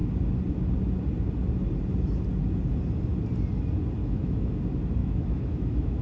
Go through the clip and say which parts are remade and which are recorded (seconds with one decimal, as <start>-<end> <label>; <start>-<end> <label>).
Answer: 0.0-4.0 recorded; 4.0-4.6 remade; 4.6-5.0 recorded; 5.0-6.0 remade